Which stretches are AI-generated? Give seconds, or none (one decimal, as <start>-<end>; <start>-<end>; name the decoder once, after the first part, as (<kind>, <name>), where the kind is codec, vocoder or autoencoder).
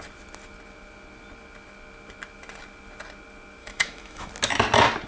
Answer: 3.6-4.3 (autoencoder, DAC-VAE)